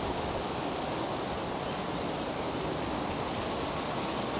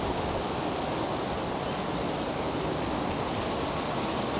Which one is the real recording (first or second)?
second